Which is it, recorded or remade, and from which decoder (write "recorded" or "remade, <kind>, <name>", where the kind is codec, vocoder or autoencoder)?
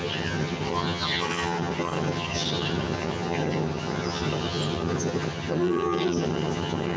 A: remade, vocoder, HiFi-GAN